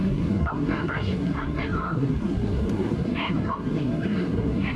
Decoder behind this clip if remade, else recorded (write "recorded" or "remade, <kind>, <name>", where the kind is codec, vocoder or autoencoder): remade, codec, SNAC